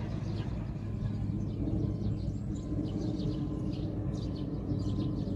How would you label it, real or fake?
real